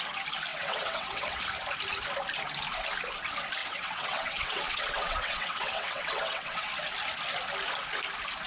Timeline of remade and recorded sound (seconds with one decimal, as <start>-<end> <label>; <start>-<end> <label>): 0.0-0.5 recorded; 0.5-1.4 remade; 1.4-3.6 recorded; 3.6-6.7 remade; 6.7-8.5 recorded